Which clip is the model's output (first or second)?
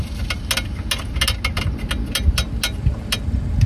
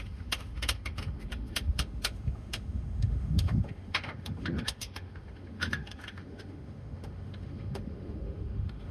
second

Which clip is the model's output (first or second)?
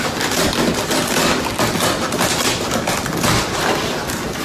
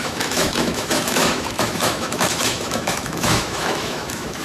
second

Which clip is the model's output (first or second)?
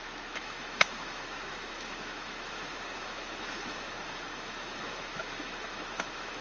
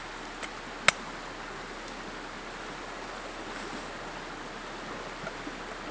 first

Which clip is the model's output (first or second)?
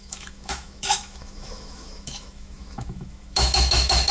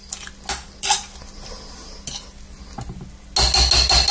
first